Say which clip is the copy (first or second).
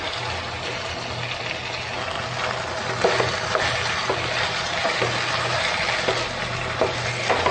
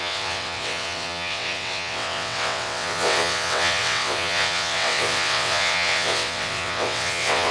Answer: second